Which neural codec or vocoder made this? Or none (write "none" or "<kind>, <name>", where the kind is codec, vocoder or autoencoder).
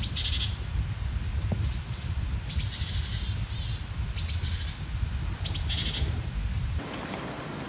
none